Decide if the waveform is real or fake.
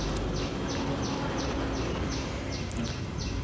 real